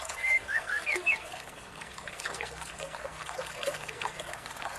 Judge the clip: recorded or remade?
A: remade